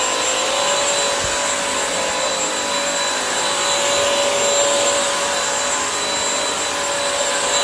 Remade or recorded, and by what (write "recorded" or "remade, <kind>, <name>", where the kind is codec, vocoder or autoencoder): recorded